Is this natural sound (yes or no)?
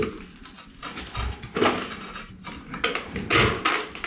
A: yes